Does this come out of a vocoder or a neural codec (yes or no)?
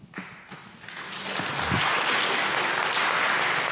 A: no